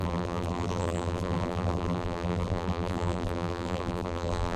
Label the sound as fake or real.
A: fake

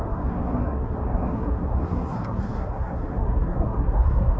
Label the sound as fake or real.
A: fake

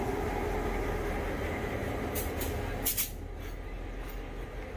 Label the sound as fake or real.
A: real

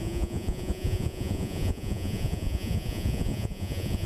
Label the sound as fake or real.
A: fake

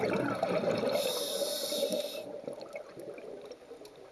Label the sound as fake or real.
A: real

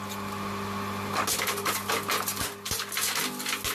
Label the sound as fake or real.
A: real